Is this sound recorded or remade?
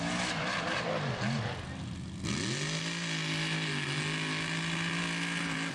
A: recorded